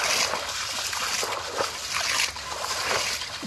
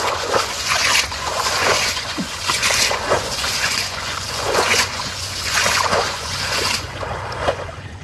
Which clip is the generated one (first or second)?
second